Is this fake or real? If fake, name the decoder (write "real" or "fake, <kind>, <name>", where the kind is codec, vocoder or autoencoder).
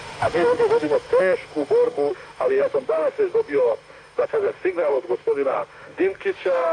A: fake, autoencoder, DAC-VAE